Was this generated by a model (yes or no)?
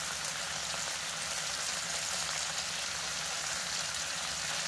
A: no